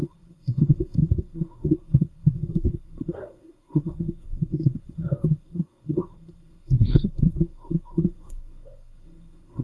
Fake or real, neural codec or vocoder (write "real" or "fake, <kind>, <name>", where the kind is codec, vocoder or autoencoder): fake, codec, SNAC